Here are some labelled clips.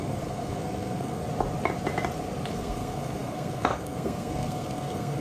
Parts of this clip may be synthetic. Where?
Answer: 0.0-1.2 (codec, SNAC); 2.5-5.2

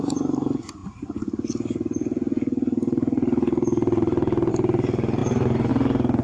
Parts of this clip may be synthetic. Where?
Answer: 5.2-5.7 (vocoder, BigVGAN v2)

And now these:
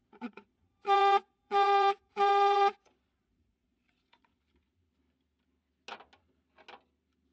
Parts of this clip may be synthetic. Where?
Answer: 0.0-4.4 (vocoder, Vocos)